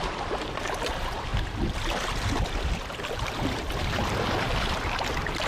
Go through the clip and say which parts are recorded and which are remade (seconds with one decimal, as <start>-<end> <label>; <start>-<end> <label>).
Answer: 0.0-5.5 recorded